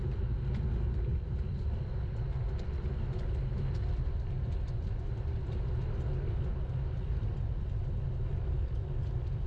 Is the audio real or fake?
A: real